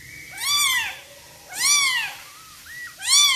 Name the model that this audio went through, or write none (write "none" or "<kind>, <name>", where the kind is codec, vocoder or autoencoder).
none